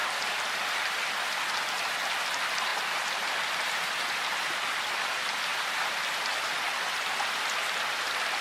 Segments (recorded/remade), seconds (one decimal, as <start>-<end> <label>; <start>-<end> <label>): 0.0-8.4 recorded